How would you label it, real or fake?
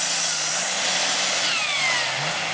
real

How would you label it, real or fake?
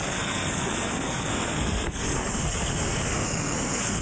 fake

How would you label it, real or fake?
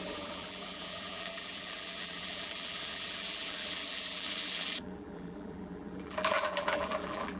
fake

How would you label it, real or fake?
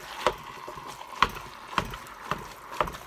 real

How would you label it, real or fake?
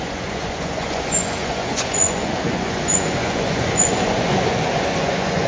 fake